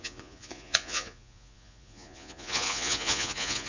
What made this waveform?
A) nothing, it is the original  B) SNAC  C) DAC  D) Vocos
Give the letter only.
D